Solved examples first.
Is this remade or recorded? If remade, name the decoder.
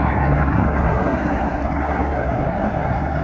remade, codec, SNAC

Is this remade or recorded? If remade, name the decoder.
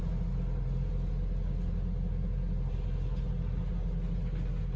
recorded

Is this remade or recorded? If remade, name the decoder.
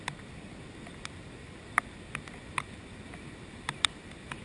recorded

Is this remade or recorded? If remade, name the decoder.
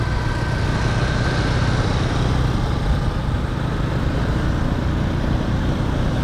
recorded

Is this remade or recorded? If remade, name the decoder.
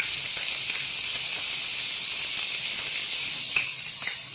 recorded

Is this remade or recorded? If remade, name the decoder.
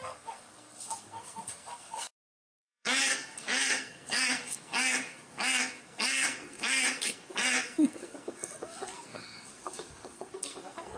remade, codec, SNAC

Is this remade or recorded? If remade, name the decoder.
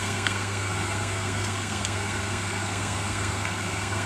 remade, codec, SNAC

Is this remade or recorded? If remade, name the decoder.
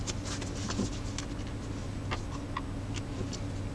recorded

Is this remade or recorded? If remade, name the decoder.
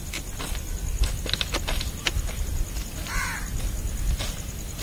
recorded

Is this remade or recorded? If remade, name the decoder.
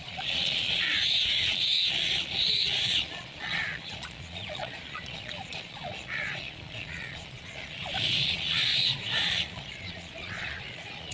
remade, vocoder, Vocos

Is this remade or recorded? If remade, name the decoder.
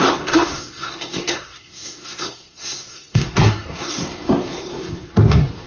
remade, codec, SNAC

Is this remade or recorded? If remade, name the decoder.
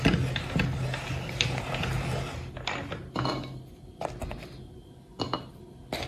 recorded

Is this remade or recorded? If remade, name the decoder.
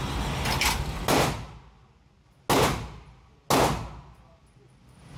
recorded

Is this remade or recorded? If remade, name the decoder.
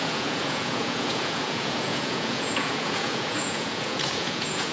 remade, vocoder, Vocos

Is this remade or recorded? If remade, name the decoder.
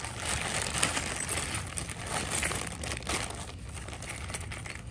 recorded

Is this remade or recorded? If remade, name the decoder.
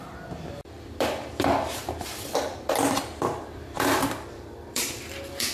remade, vocoder, BigVGAN v2